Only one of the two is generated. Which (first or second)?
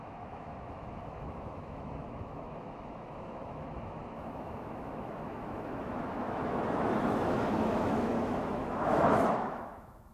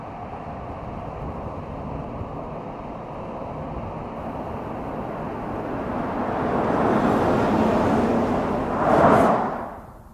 first